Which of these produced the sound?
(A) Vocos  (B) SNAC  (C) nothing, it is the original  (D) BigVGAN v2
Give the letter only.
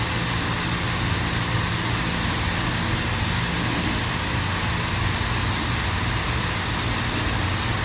C